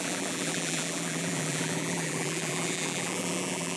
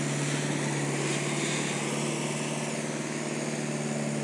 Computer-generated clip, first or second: first